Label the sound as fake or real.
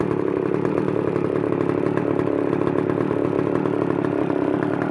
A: real